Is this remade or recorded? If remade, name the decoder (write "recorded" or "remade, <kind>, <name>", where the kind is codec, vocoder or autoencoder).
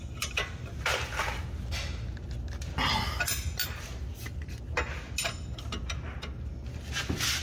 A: recorded